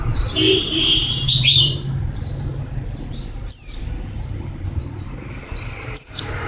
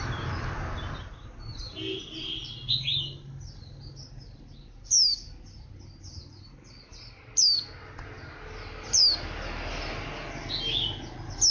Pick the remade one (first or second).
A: first